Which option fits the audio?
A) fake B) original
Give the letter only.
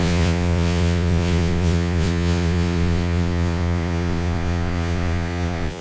A